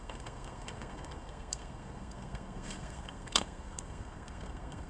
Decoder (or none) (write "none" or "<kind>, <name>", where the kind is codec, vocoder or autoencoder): codec, SNAC